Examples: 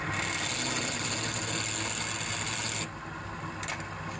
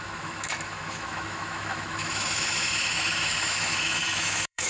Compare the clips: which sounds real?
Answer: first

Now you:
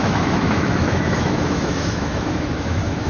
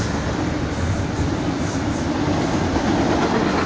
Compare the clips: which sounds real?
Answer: second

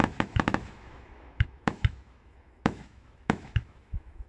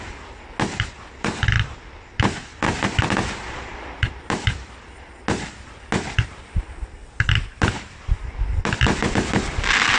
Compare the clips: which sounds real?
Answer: second